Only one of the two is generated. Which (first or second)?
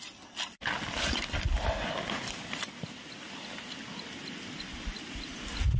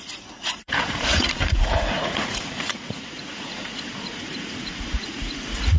second